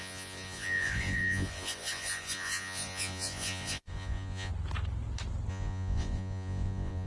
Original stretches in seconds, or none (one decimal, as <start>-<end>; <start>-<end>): 4.5-5.5

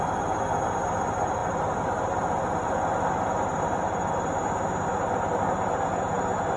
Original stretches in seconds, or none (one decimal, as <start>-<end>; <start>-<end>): 0.0-6.6

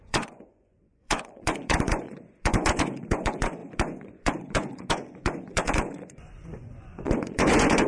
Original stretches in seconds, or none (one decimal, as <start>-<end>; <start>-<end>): none

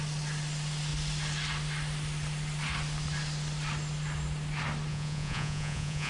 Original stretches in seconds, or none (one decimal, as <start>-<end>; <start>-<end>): 0.0-4.9

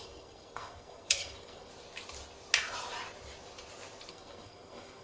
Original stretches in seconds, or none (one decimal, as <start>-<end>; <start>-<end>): 1.7-4.1

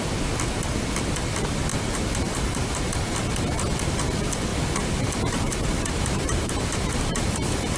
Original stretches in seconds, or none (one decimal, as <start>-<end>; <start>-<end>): 0.0-1.7; 2.8-4.5